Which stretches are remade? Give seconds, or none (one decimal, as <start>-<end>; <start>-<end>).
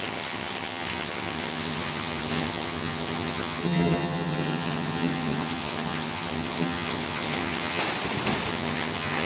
0.0-7.8; 8.5-9.3